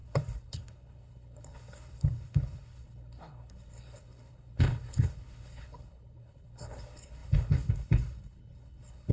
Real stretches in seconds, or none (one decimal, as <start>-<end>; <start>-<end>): none